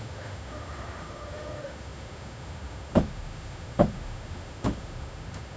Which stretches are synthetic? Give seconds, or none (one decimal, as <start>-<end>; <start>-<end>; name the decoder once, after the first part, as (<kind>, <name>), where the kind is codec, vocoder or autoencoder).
0.0-5.6 (autoencoder, DAC-VAE)